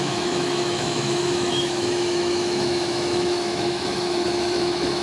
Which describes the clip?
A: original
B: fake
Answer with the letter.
B